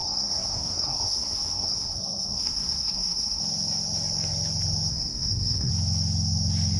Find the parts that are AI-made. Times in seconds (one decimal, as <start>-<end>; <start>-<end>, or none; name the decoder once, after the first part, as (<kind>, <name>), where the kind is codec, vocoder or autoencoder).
0.0-3.4 (codec, SNAC); 4.9-5.7